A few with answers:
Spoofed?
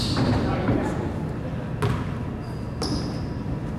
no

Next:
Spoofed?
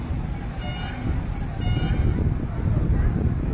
no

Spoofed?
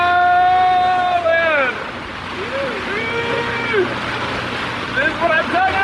no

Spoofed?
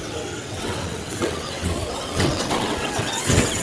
yes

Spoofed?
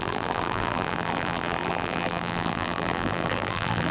yes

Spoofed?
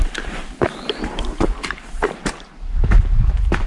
yes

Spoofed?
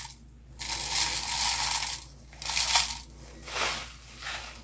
no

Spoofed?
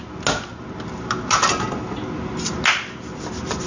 no